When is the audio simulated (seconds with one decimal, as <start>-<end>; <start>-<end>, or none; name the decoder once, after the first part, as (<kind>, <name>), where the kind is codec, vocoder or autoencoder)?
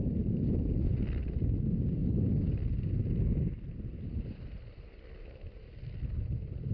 none